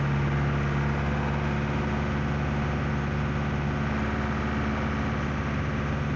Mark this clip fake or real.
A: real